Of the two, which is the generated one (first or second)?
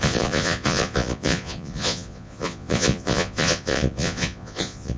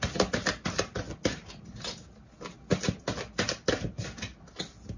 first